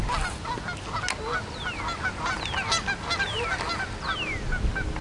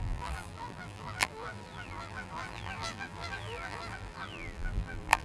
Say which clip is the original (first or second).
first